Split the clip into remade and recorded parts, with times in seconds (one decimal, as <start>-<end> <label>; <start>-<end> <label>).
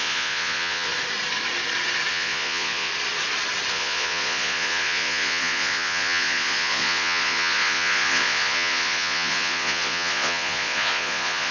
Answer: 0.0-0.9 remade; 0.9-2.1 recorded; 2.1-2.9 remade; 2.9-3.7 recorded; 3.7-11.5 remade